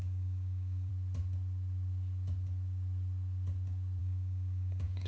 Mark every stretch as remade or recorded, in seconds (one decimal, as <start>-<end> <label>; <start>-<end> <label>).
0.0-0.9 remade; 0.9-4.0 recorded; 4.0-5.1 remade